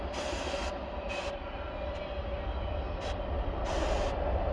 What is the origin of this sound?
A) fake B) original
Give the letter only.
B